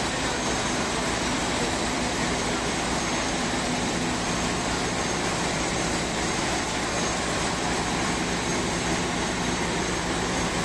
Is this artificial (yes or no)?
yes